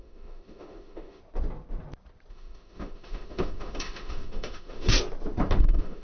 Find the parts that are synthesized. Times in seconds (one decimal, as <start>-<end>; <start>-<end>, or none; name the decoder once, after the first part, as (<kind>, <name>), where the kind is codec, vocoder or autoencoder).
0.0-1.2 (autoencoder, DAC-VAE); 2.3-5.0; 5.6-6.0